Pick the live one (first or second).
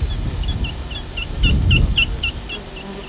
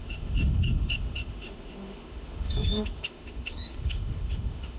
first